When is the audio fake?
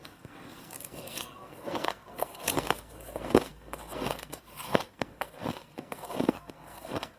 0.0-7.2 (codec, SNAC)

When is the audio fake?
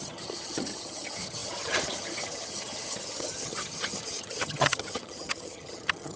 0.0-6.2 (vocoder, HiFi-GAN)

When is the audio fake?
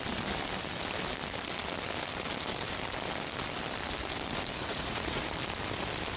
4.6-5.2 (vocoder, Vocos)